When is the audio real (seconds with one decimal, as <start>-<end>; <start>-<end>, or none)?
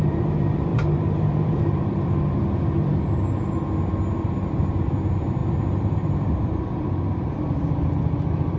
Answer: 2.9-4.8